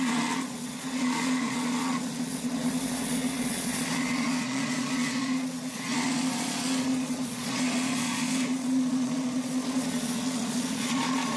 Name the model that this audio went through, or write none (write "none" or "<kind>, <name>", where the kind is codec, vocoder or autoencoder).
vocoder, Vocos